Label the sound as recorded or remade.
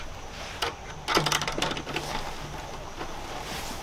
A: recorded